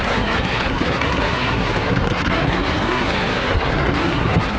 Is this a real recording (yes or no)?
no